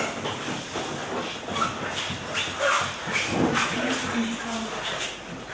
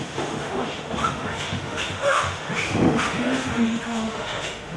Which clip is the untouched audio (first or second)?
first